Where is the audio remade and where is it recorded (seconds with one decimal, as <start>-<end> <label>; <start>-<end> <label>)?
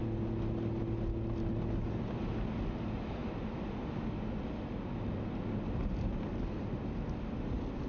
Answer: 0.0-7.9 recorded